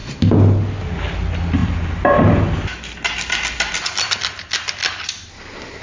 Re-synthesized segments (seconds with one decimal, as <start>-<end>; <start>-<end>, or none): none